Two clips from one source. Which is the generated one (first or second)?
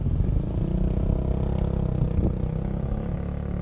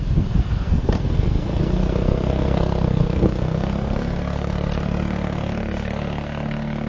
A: second